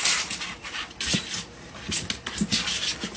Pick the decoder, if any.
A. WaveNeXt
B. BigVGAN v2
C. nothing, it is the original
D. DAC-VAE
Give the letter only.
C